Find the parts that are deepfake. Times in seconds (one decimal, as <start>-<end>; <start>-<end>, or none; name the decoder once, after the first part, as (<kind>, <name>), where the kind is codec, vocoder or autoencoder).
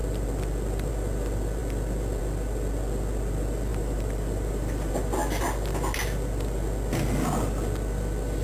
3.7-4.9 (vocoder, BigVGAN v2)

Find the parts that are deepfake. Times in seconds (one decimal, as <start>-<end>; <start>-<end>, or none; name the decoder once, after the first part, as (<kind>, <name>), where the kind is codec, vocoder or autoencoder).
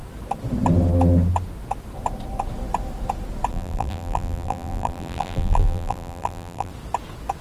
3.5-6.7 (vocoder, BigVGAN v2)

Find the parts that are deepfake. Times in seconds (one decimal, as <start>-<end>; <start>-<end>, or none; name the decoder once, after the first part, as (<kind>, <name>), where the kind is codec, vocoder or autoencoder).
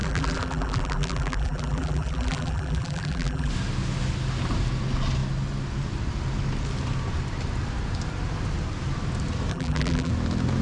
0.0-3.5 (vocoder, BigVGAN v2); 9.5-10.1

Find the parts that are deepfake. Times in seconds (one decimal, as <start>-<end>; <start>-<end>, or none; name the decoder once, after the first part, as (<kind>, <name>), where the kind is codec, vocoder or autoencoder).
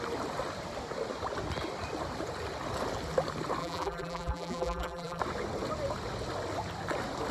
3.6-5.2 (vocoder, BigVGAN v2)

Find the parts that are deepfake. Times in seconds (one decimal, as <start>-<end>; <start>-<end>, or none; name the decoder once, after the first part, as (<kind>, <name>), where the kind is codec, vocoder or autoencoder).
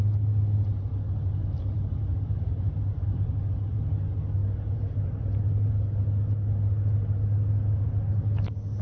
1.4-3.3 (vocoder, BigVGAN v2); 4.4-5.7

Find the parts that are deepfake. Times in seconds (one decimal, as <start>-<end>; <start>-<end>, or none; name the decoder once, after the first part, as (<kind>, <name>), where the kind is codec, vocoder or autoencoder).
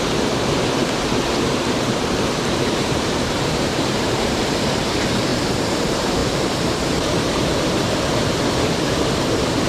0.0-9.7 (vocoder, BigVGAN v2)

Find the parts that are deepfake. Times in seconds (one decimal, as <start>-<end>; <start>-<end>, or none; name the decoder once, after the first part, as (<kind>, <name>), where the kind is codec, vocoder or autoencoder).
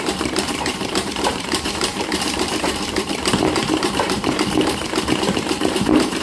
0.0-6.2 (vocoder, BigVGAN v2)